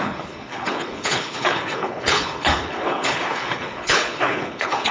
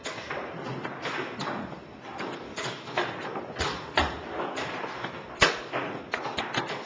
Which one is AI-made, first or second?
first